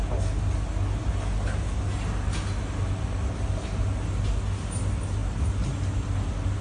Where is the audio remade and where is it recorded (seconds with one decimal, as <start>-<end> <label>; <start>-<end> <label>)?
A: 0.0-6.6 recorded